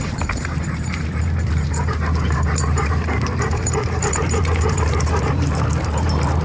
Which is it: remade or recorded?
remade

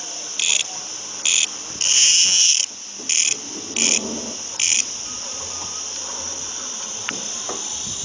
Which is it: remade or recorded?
remade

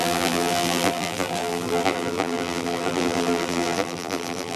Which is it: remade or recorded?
remade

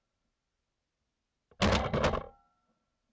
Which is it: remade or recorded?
recorded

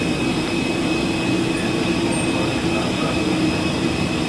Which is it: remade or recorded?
recorded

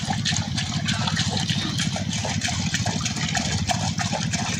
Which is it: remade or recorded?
recorded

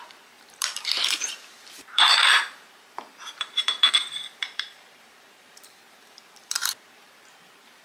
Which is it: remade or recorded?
remade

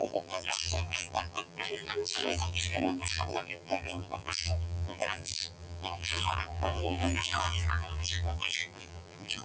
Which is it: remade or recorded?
remade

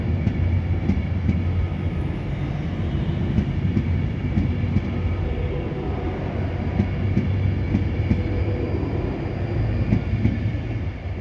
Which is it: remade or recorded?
recorded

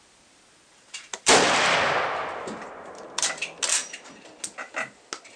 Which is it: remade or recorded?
recorded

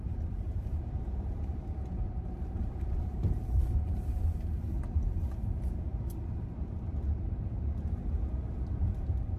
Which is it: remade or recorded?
remade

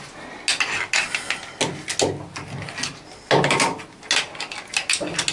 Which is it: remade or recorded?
recorded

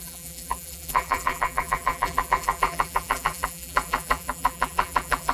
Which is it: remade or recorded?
remade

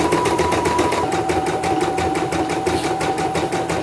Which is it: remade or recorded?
remade